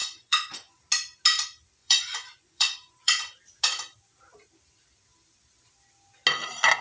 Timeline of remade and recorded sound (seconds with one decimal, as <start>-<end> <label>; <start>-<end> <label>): 0.0-0.8 remade; 0.8-1.8 recorded; 1.8-3.2 remade; 3.2-6.8 recorded